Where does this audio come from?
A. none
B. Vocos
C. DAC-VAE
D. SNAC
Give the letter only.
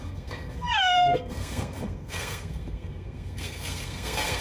D